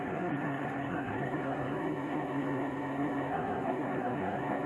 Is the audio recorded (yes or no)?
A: no